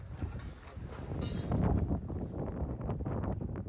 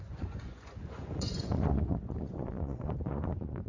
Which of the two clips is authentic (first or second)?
first